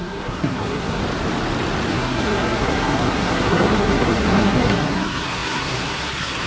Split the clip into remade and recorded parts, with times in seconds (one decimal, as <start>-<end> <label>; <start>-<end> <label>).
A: 0.0-1.0 remade; 1.0-1.9 recorded; 1.9-6.5 remade

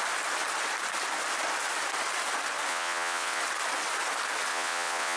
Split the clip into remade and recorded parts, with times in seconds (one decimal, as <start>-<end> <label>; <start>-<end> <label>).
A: 0.0-2.7 recorded; 2.7-3.4 remade; 3.4-4.5 recorded; 4.5-5.2 remade

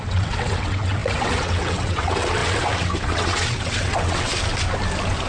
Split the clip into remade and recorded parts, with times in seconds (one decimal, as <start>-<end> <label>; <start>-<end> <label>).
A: 0.0-4.3 remade; 4.3-5.3 recorded

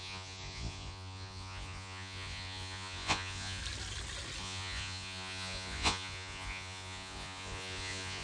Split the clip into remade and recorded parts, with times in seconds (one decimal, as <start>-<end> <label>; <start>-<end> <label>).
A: 0.0-3.6 remade; 3.6-4.4 recorded; 4.4-8.2 remade

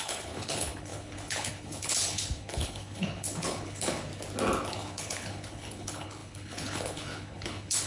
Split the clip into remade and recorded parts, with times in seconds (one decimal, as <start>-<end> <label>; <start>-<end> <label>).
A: 0.0-4.1 remade; 4.1-4.7 recorded; 4.7-7.9 remade

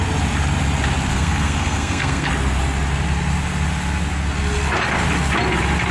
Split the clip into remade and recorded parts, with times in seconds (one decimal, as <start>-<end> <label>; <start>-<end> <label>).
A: 0.0-1.1 recorded; 1.1-2.3 remade; 2.3-5.9 recorded